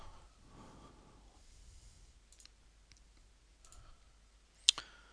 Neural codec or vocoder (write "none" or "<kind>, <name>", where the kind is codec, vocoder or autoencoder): none